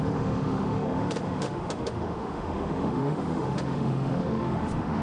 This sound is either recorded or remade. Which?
remade